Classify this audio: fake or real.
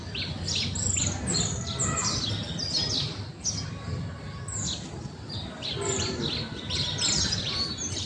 real